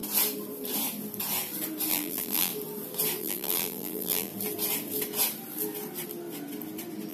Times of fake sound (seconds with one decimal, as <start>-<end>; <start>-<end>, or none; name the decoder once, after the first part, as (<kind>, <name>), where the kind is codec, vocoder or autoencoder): 1.9-2.5 (vocoder, BigVGAN v2); 3.2-4.3